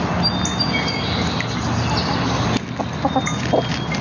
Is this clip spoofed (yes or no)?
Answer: no